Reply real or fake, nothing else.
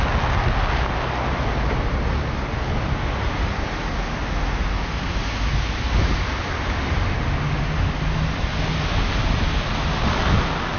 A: real